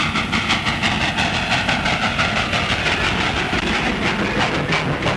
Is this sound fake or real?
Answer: real